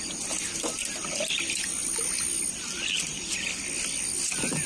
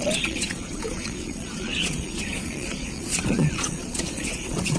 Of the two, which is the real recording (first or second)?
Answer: first